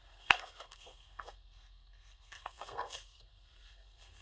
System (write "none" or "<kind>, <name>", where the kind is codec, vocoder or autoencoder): codec, SNAC